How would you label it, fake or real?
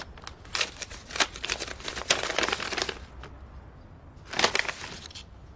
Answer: real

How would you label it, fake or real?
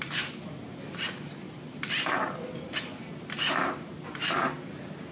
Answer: real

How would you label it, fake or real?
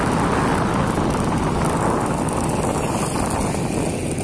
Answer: real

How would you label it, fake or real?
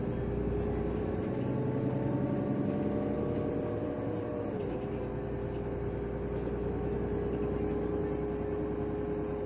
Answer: real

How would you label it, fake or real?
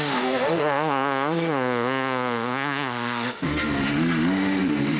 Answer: fake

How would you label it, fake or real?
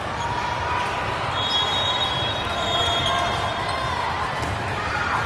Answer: real